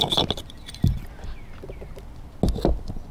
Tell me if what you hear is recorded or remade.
recorded